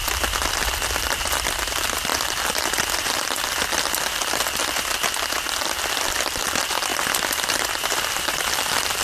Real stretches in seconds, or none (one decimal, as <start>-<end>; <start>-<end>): 0.0-2.1; 4.4-6.9